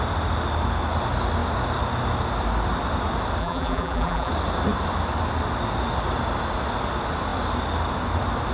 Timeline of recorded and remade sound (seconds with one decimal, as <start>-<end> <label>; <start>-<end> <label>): 0.0-3.4 recorded; 3.4-4.3 remade; 4.3-8.5 recorded